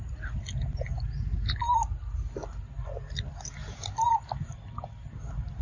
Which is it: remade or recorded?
recorded